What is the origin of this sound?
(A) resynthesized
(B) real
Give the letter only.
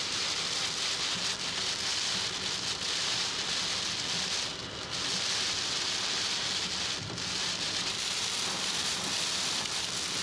B